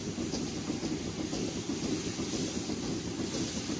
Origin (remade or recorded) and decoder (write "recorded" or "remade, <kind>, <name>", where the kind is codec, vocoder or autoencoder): recorded